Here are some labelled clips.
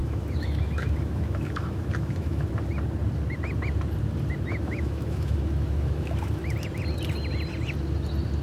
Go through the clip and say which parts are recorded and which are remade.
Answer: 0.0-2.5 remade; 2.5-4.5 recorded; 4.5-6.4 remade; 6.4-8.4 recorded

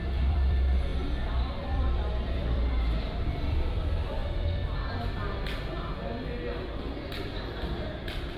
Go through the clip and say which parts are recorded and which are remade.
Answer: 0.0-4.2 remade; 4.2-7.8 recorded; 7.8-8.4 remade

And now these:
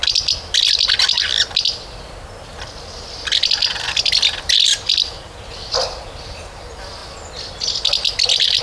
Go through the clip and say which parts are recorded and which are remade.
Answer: 0.0-8.6 recorded